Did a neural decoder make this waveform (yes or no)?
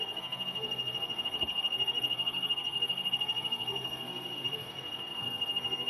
yes